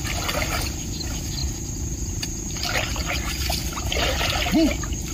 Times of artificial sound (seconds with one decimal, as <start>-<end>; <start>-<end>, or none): none